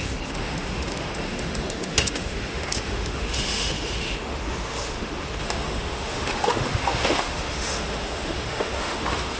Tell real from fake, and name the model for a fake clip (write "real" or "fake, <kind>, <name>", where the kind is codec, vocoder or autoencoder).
fake, autoencoder, DAC-VAE